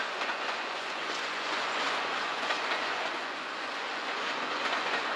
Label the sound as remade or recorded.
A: remade